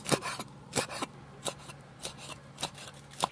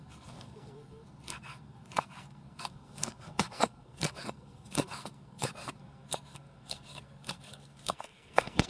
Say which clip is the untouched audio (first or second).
first